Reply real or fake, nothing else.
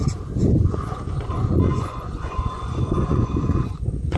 fake